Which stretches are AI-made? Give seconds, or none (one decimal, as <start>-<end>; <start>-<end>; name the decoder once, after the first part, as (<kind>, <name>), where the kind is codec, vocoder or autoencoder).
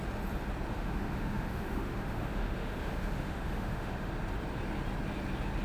0.7-4.1 (autoencoder, DAC-VAE)